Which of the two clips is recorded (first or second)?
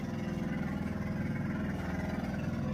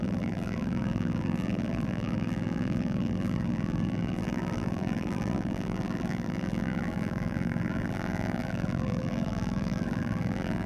first